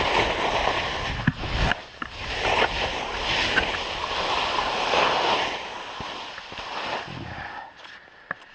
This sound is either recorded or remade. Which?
recorded